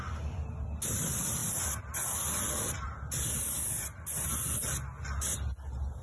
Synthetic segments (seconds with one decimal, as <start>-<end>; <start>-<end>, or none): none

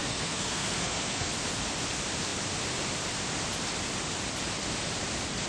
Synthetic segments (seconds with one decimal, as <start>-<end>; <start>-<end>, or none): 0.0-1.3

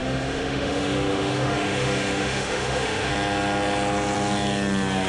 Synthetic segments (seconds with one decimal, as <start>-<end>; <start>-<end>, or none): 0.0-3.1

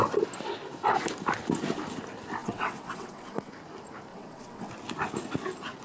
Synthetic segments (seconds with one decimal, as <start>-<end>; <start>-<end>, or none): 2.4-3.5; 4.1-4.7

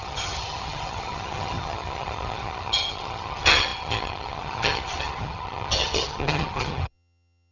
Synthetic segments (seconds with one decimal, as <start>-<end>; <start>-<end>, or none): 0.0-7.5

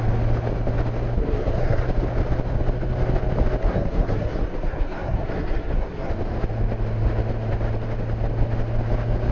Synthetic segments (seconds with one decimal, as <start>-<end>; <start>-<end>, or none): 1.2-1.8; 3.6-6.1

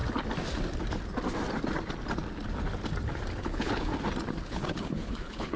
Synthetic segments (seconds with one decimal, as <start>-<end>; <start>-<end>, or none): 3.4-3.9; 4.4-5.6